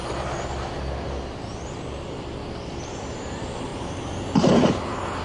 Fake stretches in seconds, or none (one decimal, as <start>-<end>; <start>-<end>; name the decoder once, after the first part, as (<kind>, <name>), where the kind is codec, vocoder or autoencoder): none